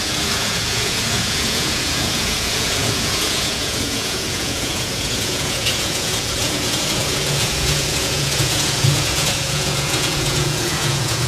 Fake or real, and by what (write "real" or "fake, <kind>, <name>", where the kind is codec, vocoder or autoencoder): fake, vocoder, Vocos